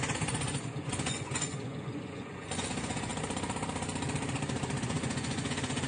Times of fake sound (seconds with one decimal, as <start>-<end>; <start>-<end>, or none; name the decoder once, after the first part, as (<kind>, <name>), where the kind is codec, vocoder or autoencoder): 0.0-3.1 (vocoder, Vocos); 4.8-5.9